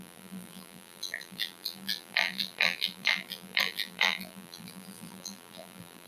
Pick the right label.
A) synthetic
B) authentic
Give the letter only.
A